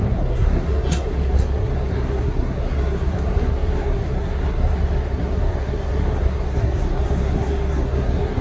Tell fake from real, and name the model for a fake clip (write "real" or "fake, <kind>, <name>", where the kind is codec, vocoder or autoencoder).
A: fake, codec, SNAC